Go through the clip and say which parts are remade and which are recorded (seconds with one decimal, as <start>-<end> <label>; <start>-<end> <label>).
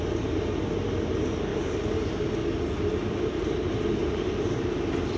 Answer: 0.0-1.5 recorded; 1.5-2.1 remade; 2.1-3.0 recorded; 3.0-5.2 remade